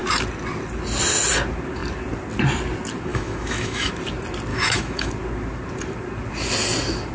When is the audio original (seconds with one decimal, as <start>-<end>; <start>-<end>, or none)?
0.0-3.1; 3.9-4.5; 5.1-7.1

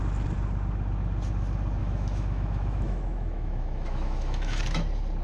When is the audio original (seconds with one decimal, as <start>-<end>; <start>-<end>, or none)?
0.0-1.8; 4.6-5.2

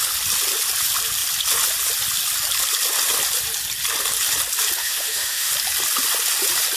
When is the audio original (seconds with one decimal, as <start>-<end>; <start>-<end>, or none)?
0.0-4.8; 5.5-6.8

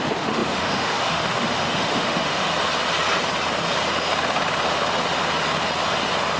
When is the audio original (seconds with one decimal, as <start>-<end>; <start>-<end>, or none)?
2.5-6.4